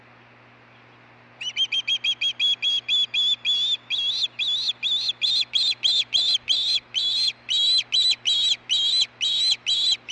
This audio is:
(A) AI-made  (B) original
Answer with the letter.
B